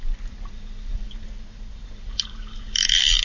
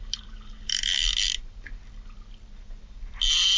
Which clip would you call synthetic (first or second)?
first